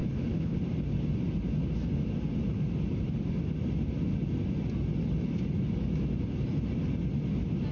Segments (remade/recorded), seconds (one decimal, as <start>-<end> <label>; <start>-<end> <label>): 0.0-0.6 remade; 0.6-7.7 recorded